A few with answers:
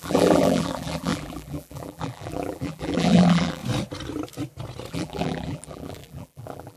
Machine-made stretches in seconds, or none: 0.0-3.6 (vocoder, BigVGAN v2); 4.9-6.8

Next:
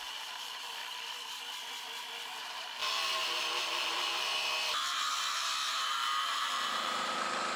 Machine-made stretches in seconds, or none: 0.0-0.8 (vocoder, BigVGAN v2); 2.4-4.3; 5.7-7.6

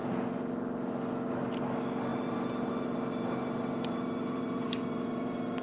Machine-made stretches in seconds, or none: 0.0-0.9 (vocoder, BigVGAN v2); 2.1-5.6

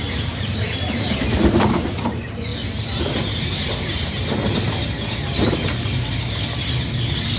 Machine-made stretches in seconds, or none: 0.0-2.5 (vocoder, BigVGAN v2); 3.4-4.2

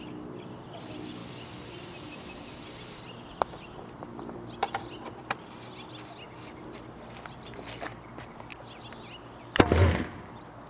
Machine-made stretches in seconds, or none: 1.2-5.4 (vocoder, BigVGAN v2)

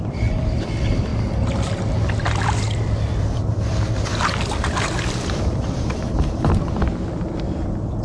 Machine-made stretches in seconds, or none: 0.0-1.1 (vocoder, BigVGAN v2); 2.3-4.1; 5.1-8.0

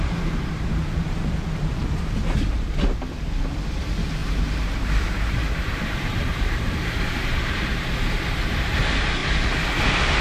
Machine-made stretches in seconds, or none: 0.0-1.8 (vocoder, BigVGAN v2); 3.8-9.2